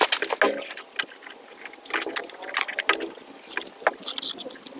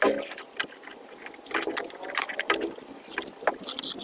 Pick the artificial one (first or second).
second